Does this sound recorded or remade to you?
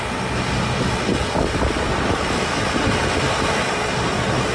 recorded